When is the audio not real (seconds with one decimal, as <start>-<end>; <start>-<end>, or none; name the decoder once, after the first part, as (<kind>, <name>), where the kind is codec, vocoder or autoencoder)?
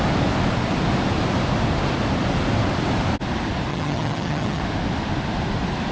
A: 3.7-4.6 (vocoder, HiFi-GAN)